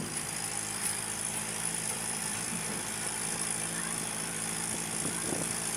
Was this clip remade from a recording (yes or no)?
yes